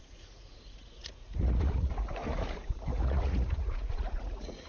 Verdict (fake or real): fake